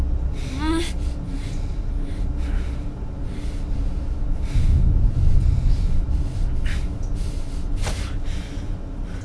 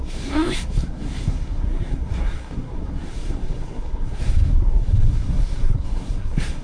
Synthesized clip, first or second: second